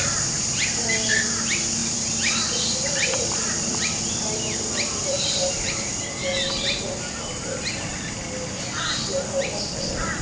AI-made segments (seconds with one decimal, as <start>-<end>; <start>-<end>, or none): 1.8-6.2